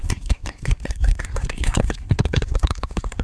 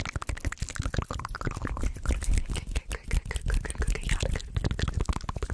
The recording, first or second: second